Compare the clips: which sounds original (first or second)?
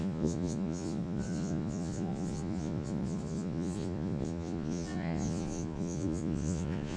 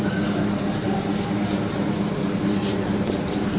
second